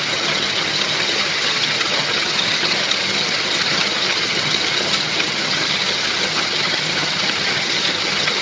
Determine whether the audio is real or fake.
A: fake